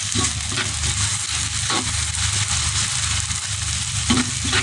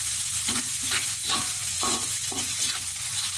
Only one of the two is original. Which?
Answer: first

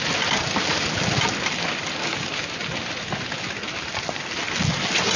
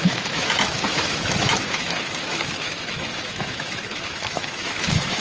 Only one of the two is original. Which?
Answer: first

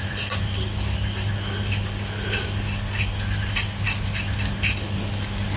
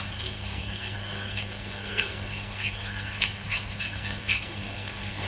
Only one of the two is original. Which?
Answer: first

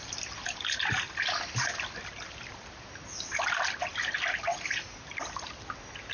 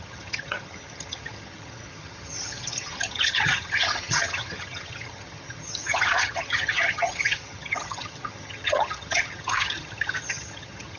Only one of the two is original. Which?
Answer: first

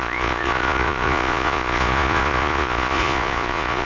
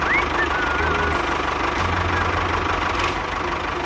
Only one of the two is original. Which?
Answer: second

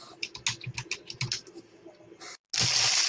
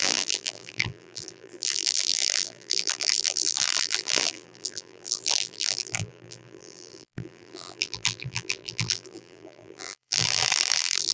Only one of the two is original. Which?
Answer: first